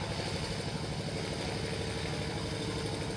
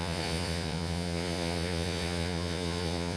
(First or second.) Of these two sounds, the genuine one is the first